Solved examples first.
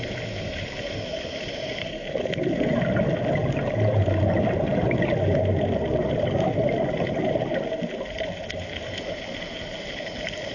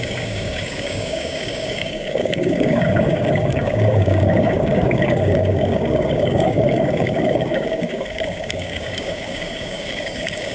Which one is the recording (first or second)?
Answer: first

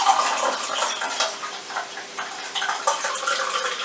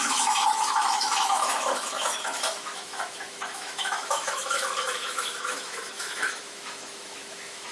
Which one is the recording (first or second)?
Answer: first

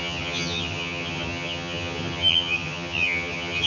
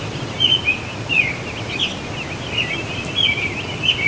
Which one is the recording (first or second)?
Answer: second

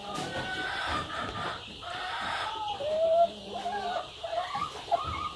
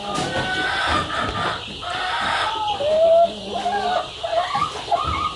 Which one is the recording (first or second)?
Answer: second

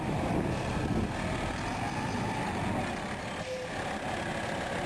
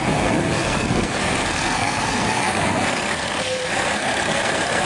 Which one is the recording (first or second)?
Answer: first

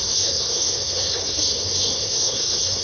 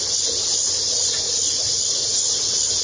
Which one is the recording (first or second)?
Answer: second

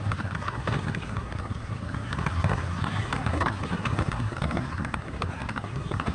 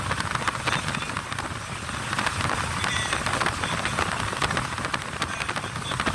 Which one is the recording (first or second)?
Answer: second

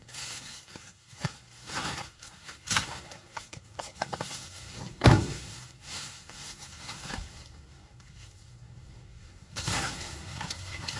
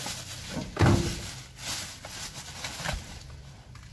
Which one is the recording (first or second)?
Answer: second